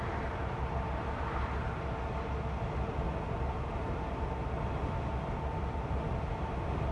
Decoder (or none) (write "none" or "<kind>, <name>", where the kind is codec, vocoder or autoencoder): none